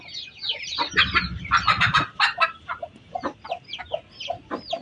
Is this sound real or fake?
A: real